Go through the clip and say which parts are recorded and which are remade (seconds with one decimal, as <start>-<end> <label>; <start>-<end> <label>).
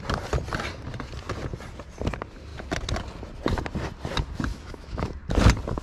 0.0-4.5 recorded; 4.5-5.1 remade; 5.1-5.8 recorded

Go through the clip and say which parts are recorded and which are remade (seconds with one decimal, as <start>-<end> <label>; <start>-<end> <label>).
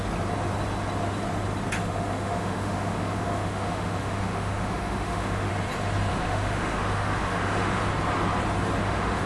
0.0-1.8 recorded; 1.8-5.5 remade; 5.5-6.1 recorded; 6.1-7.8 remade; 7.8-8.8 recorded; 8.8-9.3 remade